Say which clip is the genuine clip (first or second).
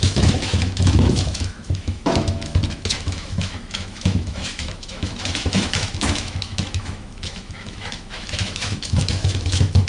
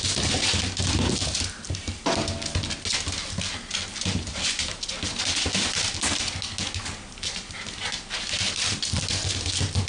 second